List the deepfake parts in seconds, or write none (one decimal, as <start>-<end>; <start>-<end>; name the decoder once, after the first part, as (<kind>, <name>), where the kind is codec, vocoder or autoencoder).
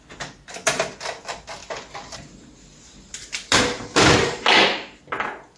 none